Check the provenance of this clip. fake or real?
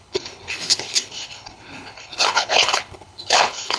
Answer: fake